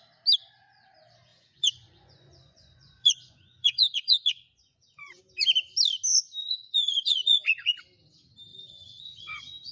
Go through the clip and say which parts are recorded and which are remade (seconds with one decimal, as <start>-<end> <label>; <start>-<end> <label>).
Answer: 0.0-1.3 recorded; 1.3-5.2 remade; 5.2-6.4 recorded; 6.4-7.8 remade; 7.8-8.5 recorded; 8.5-9.7 remade